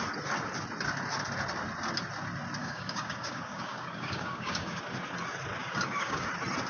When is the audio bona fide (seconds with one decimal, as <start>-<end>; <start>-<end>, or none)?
0.0-2.6; 4.8-5.6; 6.3-6.7